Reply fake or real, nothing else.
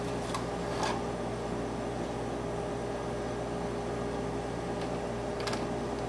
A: real